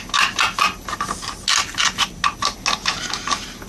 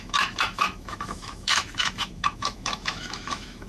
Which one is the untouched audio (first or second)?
first